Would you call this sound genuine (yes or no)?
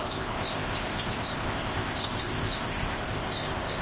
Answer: no